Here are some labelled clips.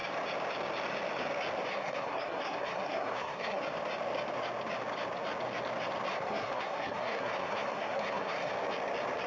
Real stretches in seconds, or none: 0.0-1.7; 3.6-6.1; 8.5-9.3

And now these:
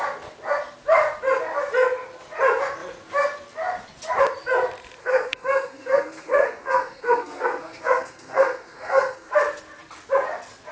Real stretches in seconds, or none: 0.0-5.0; 9.3-10.7

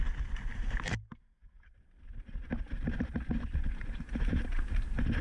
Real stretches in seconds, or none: 0.0-2.6

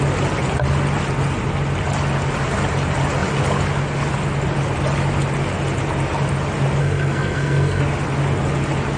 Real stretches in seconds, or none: 0.0-6.8; 7.8-9.0

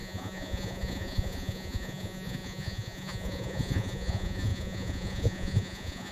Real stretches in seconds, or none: none

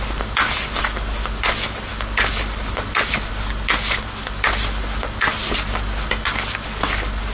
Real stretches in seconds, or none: 0.0-7.3

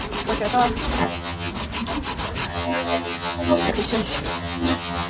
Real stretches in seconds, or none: 0.0-1.0; 1.5-2.5; 3.7-4.3